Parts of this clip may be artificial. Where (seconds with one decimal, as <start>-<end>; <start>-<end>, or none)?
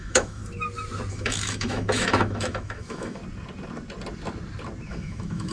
0.0-0.4; 1.1-3.2; 4.9-5.5